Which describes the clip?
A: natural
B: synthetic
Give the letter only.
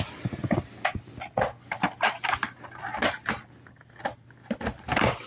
A